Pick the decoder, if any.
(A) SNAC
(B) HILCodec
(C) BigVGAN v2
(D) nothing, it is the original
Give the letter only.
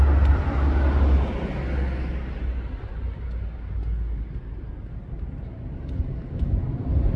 D